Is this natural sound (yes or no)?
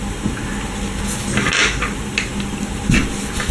yes